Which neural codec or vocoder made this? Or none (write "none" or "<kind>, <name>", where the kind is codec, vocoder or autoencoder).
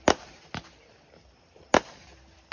none